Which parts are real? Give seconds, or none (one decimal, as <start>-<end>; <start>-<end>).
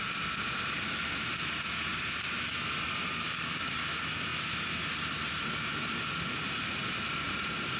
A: 0.0-7.8